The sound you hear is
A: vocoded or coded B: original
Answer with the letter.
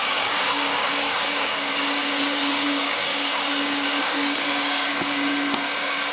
A